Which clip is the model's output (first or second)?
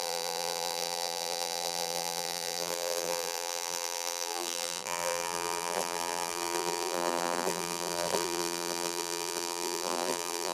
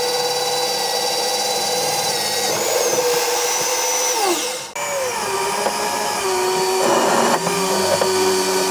first